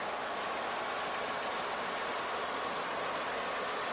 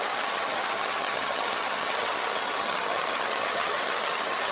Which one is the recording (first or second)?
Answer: first